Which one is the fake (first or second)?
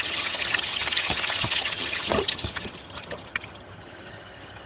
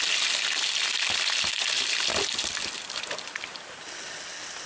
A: first